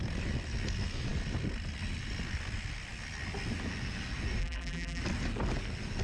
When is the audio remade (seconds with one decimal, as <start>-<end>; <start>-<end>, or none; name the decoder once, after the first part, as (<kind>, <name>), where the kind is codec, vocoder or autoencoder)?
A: 4.4-5.0 (vocoder, BigVGAN v2)